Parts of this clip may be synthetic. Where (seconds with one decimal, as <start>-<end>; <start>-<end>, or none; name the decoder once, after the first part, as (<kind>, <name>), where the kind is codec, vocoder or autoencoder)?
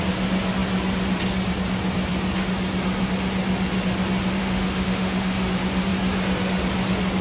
4.4-5.5 (autoencoder, DAC-VAE)